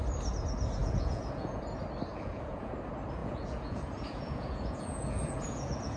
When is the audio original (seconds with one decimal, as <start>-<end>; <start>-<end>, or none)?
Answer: 0.0-0.8; 1.6-2.1; 2.7-3.2